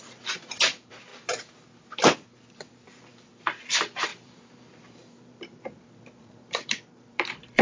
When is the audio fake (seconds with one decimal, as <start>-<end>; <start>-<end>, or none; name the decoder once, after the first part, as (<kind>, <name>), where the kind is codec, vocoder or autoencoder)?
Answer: 0.0-1.1 (vocoder, BigVGAN v2); 2.5-7.6